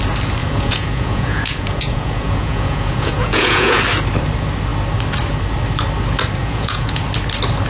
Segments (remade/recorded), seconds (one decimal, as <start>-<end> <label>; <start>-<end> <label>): 0.0-0.4 recorded; 0.4-3.8 remade; 3.8-6.4 recorded; 6.4-7.0 remade; 7.0-7.7 recorded